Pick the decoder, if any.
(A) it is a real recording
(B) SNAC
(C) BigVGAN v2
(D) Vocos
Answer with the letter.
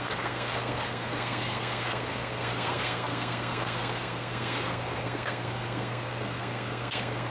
B